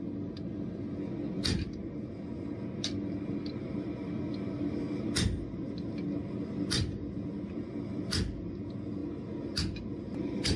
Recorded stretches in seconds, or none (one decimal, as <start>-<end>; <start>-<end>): 0.0-10.6